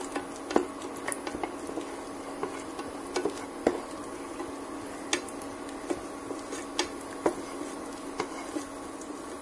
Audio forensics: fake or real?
real